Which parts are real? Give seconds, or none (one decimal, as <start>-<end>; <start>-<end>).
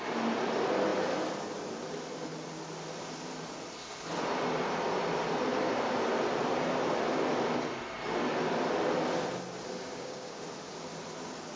0.0-9.9; 10.4-11.6